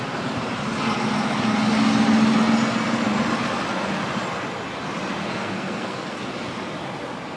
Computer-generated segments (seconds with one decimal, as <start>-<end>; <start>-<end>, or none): 5.2-6.3